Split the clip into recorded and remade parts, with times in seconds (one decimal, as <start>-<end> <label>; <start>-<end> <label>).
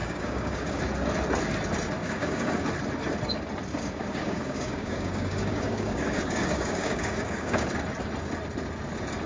0.0-0.8 remade; 0.8-2.0 recorded; 2.0-2.7 remade; 2.7-3.7 recorded; 3.7-7.7 remade; 7.7-9.3 recorded